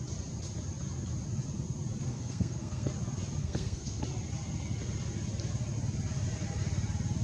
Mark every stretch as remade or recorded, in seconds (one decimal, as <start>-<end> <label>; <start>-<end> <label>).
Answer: 0.0-2.1 recorded; 2.1-2.9 remade; 2.9-3.4 recorded; 3.4-4.0 remade; 4.0-7.2 recorded